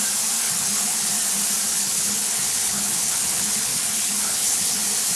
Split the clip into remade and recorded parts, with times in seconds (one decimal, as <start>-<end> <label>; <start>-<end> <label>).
0.0-0.4 recorded; 0.4-1.1 remade; 1.1-1.7 recorded; 1.7-4.8 remade; 4.8-5.2 recorded